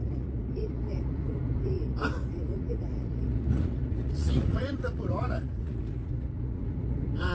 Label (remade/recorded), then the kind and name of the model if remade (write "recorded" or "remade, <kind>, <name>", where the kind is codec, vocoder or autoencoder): remade, vocoder, Vocos